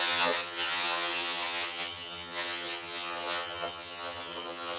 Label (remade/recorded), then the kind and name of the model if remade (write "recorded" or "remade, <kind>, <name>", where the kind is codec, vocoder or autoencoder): remade, vocoder, HiFi-GAN